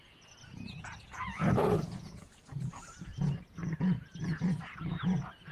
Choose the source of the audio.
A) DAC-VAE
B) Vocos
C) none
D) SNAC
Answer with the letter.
B